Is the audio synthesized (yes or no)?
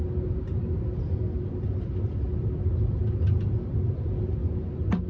no